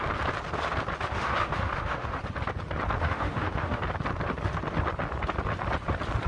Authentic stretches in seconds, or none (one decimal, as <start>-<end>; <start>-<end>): 0.0-1.1; 2.2-3.0; 3.8-6.3